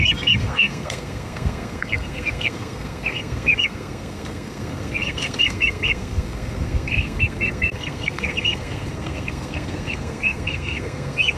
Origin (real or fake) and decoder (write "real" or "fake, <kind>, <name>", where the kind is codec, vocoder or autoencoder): fake, codec, SNAC